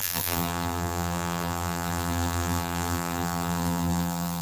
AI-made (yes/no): yes